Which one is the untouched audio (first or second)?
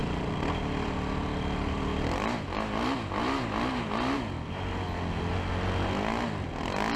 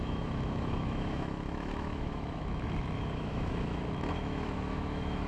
first